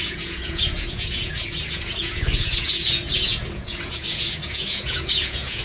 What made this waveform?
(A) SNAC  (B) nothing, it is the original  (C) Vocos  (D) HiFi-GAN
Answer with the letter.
C